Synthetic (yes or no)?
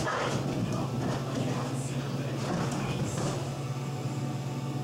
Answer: no